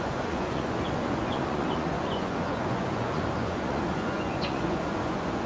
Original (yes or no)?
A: no